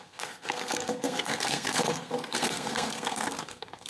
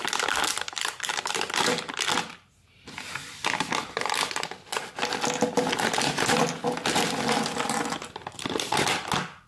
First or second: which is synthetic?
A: first